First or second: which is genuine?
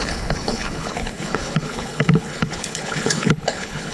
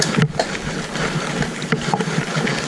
second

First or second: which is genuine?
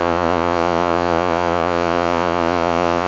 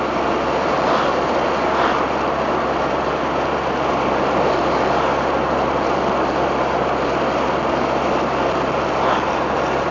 second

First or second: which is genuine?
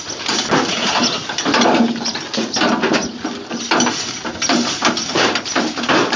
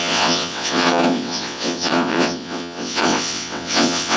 first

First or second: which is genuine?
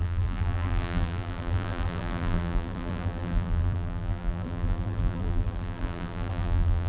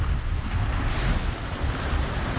second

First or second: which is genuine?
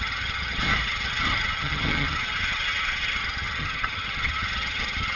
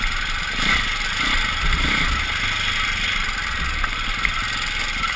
second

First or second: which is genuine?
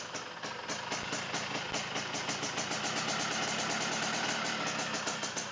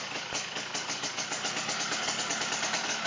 first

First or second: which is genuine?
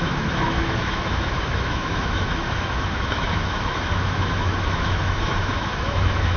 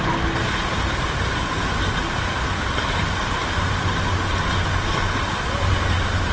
second